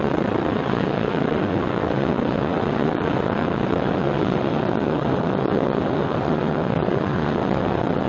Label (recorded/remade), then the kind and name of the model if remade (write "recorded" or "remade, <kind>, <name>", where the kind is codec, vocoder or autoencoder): remade, vocoder, WaveNeXt